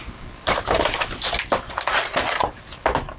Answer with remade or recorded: recorded